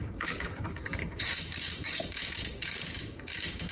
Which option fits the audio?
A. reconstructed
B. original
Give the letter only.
A